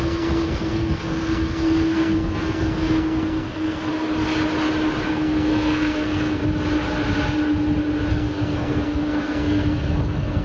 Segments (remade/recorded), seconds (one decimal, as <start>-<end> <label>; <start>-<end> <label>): 0.0-3.9 remade; 3.9-5.1 recorded; 5.1-6.4 remade; 6.4-8.1 recorded; 8.1-10.4 remade